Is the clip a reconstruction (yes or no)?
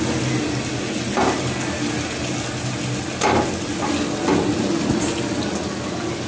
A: no